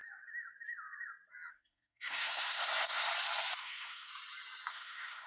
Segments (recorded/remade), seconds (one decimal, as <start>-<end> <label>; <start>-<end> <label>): 0.0-1.5 recorded; 1.5-3.1 remade; 3.1-3.6 recorded; 3.6-4.1 remade; 4.1-4.7 recorded; 4.7-5.3 remade